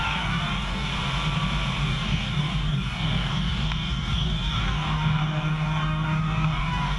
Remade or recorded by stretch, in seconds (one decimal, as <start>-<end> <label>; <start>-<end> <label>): 0.0-0.9 remade; 0.9-1.8 recorded; 1.8-7.0 remade